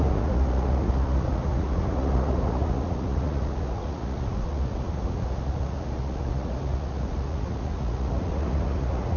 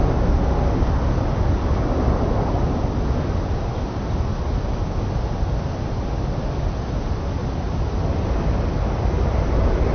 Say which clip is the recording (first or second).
second